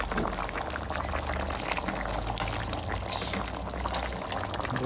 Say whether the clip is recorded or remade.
recorded